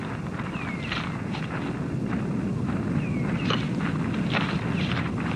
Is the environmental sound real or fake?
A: real